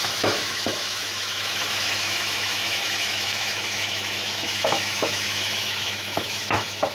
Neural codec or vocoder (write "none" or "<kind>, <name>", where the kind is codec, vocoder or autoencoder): autoencoder, DAC-VAE